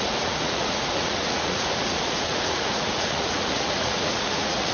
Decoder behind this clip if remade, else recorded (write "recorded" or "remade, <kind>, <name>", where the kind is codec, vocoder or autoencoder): remade, vocoder, Vocos